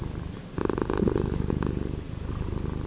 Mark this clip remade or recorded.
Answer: recorded